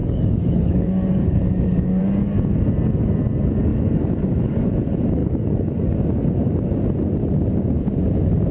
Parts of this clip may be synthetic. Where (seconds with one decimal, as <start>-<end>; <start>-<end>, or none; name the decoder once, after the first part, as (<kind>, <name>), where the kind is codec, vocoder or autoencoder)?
0.0-2.0 (codec, DAC); 3.7-4.7; 5.2-5.9